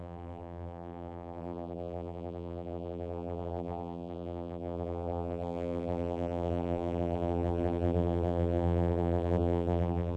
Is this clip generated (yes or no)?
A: yes